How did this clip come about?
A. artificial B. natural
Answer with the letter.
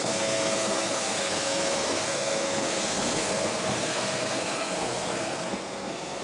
A